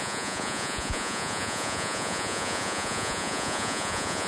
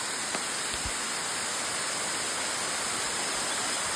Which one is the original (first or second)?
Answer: second